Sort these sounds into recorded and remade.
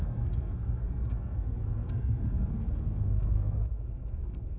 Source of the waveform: remade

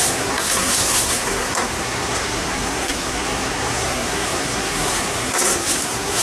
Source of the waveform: remade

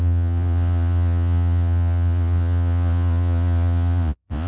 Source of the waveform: remade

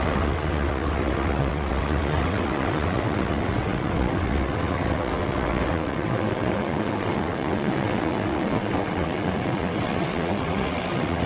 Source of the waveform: remade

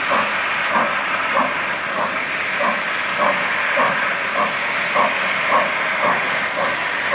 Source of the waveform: recorded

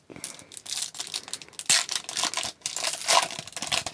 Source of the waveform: recorded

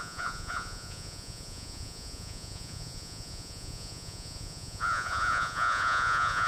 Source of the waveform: remade